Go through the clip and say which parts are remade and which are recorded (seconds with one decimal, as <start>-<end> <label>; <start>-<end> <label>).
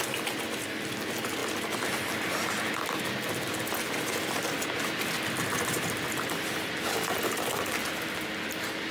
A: 0.0-8.9 recorded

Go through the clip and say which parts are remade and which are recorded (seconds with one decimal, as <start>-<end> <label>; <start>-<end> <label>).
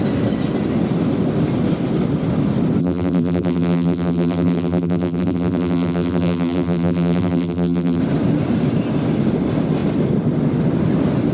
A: 0.0-2.8 recorded; 2.8-8.0 remade; 8.0-11.3 recorded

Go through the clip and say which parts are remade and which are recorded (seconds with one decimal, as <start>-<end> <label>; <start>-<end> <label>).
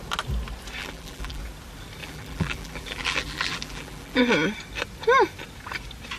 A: 0.0-0.8 recorded; 0.8-1.4 remade; 1.4-2.0 recorded; 2.0-4.2 remade; 4.2-6.2 recorded